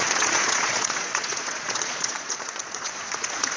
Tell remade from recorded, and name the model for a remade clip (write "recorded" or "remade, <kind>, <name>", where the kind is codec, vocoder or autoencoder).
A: remade, vocoder, Vocos